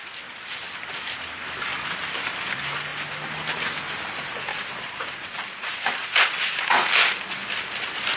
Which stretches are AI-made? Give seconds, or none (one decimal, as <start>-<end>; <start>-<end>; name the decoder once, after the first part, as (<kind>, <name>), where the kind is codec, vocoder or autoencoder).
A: 4.5-6.9 (vocoder, Vocos)